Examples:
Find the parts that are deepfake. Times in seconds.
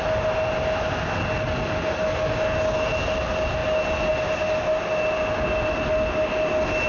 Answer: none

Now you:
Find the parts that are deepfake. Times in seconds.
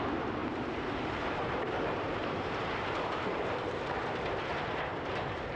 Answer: 0.4-3.8 (vocoder, BigVGAN v2)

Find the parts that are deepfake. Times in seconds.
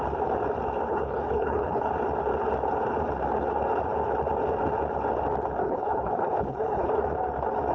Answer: 0.9-1.9 (codec, HILCodec); 5.6-6.9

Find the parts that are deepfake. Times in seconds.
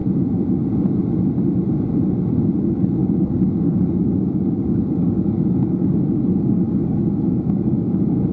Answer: 2.6-8.3 (codec, DAC)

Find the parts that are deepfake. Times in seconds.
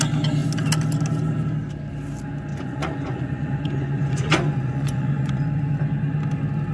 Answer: 2.5-5.4 (vocoder, Vocos)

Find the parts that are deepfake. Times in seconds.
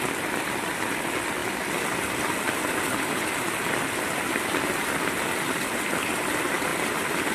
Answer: none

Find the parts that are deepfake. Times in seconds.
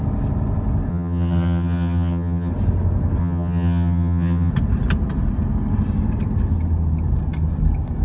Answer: 0.9-2.5 (vocoder, HiFi-GAN); 3.2-4.5